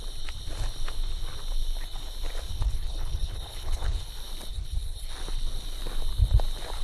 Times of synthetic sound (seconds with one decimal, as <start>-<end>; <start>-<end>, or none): 2.5-4.1; 4.5-5.1